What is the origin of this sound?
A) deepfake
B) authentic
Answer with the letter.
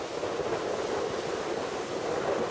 B